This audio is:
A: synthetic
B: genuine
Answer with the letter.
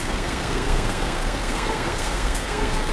A